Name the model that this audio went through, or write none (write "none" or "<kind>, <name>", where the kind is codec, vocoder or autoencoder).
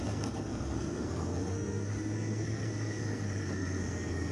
codec, SNAC